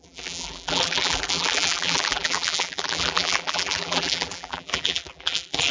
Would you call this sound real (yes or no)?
no